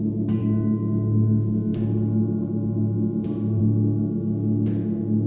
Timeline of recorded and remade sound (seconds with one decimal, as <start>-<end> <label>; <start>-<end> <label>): 0.0-0.4 recorded; 0.4-3.6 remade; 3.6-5.3 recorded